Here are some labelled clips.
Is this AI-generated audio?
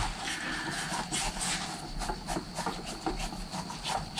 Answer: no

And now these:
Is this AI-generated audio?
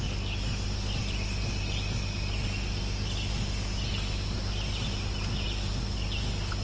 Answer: no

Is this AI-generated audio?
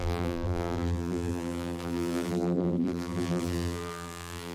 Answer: yes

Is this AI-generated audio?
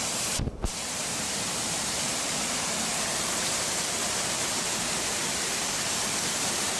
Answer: yes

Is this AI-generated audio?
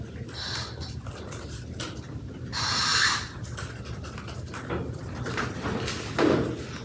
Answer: no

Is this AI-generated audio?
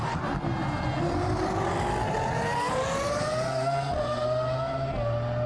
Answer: no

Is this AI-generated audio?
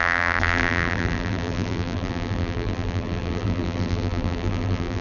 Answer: yes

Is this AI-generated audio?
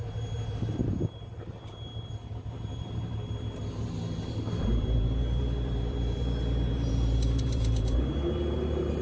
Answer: yes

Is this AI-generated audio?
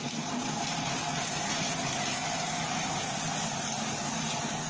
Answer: no